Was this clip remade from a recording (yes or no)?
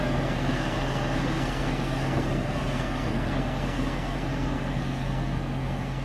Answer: yes